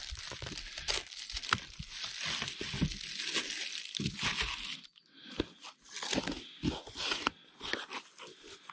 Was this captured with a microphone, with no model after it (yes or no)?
yes